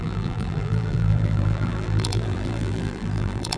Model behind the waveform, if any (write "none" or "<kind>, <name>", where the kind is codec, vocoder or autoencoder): vocoder, BigVGAN v2